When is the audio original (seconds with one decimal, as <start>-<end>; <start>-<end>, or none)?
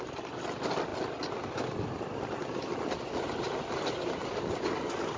0.0-5.2